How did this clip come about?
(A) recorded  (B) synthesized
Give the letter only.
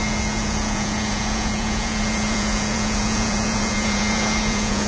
B